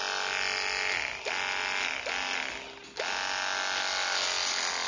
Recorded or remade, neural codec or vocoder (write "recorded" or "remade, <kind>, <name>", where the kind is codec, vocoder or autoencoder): recorded